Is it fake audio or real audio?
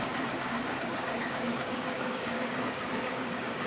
fake